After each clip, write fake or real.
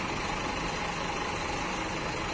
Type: real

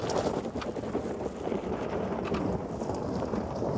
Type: fake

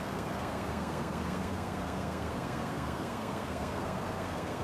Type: fake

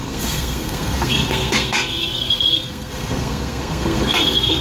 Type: fake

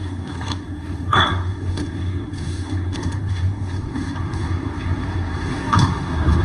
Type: fake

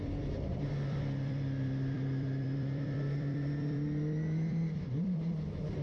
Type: fake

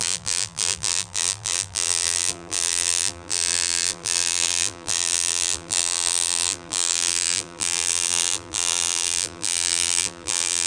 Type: fake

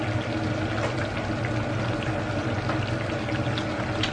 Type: real